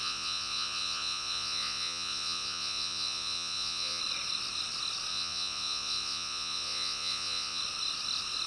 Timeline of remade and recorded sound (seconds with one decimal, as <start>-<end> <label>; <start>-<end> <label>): 0.0-4.0 remade; 4.0-5.1 recorded; 5.1-7.6 remade; 7.6-8.5 recorded